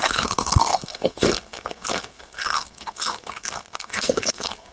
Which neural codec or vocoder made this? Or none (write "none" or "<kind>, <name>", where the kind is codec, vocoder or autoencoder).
codec, SNAC